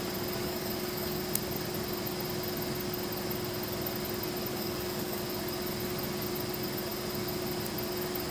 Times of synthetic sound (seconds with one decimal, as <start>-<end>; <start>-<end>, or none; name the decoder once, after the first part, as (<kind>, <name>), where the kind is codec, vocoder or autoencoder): 0.4-1.2 (codec, DAC); 4.5-5.2